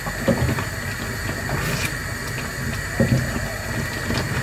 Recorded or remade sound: recorded